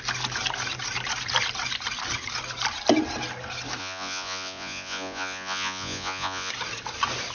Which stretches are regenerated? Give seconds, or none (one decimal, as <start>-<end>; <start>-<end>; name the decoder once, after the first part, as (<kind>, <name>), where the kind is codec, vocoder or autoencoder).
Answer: 3.8-6.5 (vocoder, Vocos)